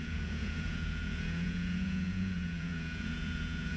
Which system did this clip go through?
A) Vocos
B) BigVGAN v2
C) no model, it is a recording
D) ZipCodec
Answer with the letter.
A